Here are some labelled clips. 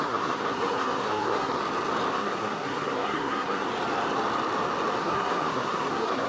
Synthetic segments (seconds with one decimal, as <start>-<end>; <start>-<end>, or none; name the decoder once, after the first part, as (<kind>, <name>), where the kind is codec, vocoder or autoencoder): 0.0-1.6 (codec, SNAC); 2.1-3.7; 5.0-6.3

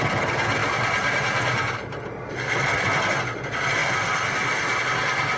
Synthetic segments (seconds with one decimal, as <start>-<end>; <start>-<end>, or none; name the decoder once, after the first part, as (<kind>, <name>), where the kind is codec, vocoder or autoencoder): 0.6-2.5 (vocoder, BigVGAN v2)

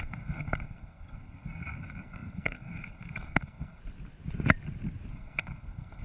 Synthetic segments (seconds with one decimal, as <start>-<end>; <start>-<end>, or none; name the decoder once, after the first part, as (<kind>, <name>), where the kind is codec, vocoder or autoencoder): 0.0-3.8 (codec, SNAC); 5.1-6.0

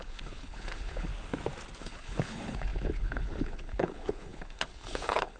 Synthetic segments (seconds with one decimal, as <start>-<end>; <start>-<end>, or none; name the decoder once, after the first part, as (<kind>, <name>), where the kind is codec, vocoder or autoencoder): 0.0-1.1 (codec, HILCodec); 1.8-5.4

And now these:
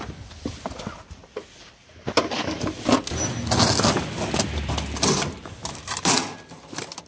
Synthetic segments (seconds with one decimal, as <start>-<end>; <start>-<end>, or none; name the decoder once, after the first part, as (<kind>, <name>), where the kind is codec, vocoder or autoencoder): 5.6-6.4 (vocoder, BigVGAN v2)